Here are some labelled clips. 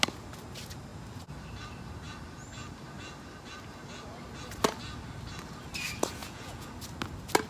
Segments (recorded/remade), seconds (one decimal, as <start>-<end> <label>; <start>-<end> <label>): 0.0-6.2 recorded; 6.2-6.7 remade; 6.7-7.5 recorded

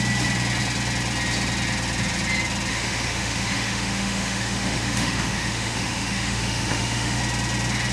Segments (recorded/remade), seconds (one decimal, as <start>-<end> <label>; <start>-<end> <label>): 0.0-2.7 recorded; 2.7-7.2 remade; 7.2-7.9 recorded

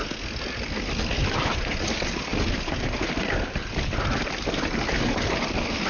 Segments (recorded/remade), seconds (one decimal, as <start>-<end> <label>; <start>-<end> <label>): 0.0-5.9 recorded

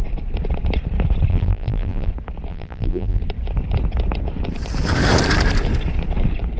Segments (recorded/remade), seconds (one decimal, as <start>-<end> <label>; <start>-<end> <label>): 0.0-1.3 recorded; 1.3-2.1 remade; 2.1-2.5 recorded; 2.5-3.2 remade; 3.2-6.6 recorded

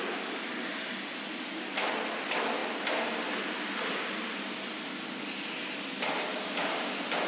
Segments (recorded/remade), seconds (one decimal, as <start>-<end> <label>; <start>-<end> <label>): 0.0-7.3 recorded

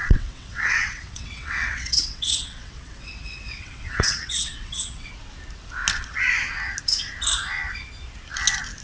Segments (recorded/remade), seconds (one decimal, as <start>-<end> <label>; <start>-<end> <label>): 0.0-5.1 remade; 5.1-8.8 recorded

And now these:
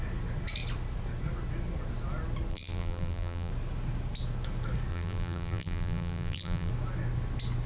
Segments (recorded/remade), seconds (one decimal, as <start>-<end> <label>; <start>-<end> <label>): 0.0-2.5 recorded; 2.5-3.5 remade; 3.5-4.9 recorded; 4.9-6.7 remade; 6.7-7.7 recorded

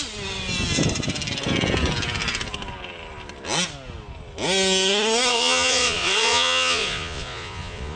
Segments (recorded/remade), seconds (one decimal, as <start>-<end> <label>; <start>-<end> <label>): 0.0-5.3 recorded; 5.3-8.0 remade